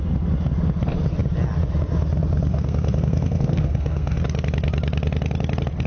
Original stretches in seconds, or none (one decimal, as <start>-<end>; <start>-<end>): 0.0-2.5; 4.2-5.9

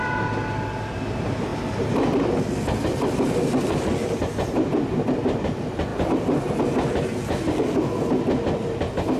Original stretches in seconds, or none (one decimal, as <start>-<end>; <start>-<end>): 0.0-9.2

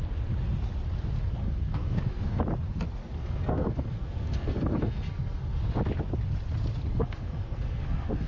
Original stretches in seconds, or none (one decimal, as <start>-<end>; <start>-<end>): 0.0-1.4; 2.4-3.0; 5.6-6.9

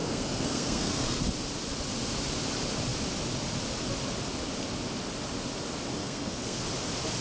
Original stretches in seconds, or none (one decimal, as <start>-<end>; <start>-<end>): 1.2-6.0; 6.6-7.2

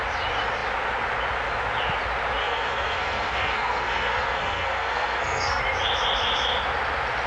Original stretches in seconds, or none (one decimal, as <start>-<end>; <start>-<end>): 0.0-2.4; 5.6-7.3